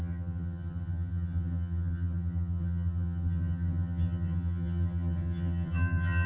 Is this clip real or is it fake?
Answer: fake